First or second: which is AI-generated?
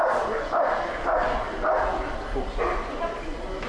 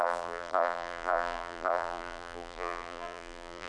second